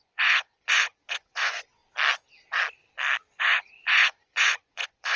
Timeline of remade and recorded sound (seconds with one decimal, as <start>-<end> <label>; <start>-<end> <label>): 0.0-1.8 remade; 1.8-3.3 recorded; 3.3-5.2 remade